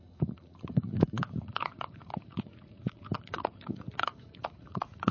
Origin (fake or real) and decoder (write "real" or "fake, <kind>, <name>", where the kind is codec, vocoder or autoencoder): fake, vocoder, Vocos